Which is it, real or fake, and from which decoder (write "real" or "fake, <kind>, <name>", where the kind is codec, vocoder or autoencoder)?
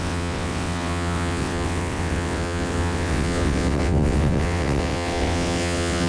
fake, vocoder, WaveNeXt